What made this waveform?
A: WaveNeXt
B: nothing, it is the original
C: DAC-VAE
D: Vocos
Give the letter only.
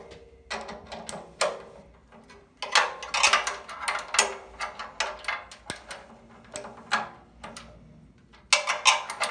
B